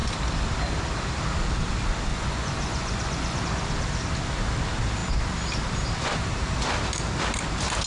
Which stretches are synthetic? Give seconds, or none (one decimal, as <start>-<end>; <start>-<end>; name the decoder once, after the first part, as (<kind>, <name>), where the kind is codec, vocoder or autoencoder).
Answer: 2.1-3.4 (vocoder, Vocos)